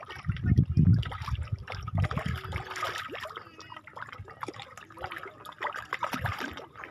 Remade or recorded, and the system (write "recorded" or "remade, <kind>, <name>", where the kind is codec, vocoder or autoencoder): remade, vocoder, BigVGAN v2